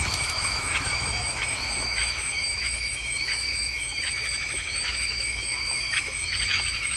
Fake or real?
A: fake